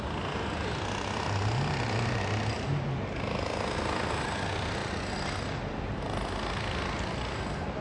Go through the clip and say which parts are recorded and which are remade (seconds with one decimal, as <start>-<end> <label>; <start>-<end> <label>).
0.0-7.8 recorded